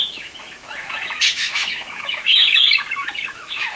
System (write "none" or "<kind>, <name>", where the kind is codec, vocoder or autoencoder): autoencoder, DAC-VAE